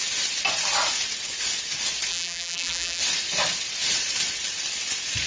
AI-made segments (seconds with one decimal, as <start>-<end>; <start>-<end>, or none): 2.1-3.0